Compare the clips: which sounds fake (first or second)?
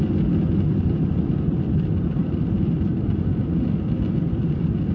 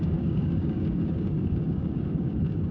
second